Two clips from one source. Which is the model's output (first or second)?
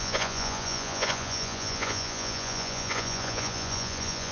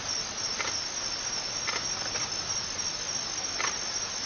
first